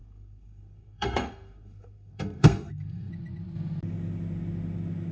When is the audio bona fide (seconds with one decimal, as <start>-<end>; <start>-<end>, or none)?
3.1-5.1